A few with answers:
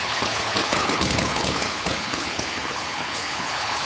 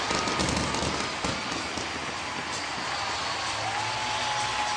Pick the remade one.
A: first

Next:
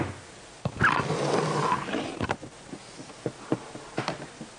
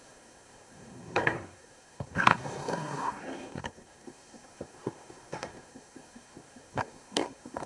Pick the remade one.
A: second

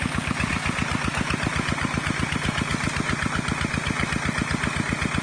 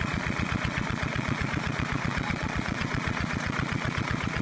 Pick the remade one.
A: second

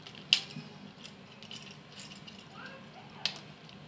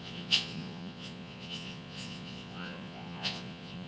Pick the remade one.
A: second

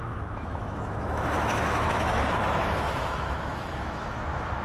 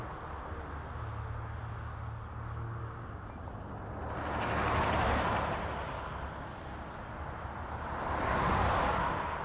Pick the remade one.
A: first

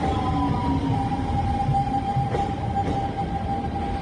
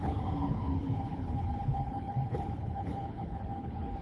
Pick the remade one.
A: second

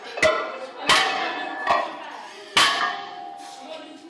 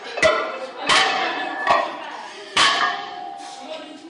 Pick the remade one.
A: second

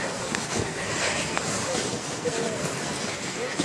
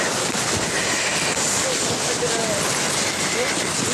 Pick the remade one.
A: first